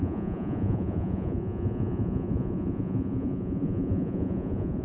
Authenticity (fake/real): fake